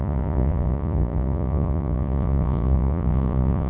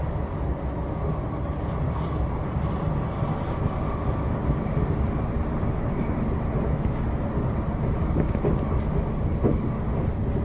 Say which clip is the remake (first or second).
first